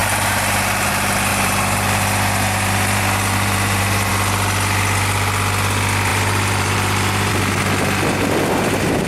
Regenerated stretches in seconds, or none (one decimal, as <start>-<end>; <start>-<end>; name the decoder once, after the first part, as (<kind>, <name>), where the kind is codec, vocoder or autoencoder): 0.0-0.9 (vocoder, BigVGAN v2); 1.3-4.1; 6.1-7.3